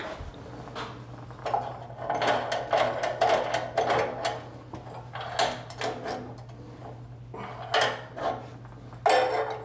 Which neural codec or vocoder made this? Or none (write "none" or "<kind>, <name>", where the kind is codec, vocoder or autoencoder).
none